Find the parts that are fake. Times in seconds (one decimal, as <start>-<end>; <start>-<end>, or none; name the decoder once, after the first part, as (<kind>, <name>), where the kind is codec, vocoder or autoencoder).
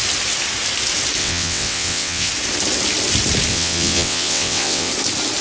1.2-2.3 (vocoder, WaveNeXt); 3.5-4.9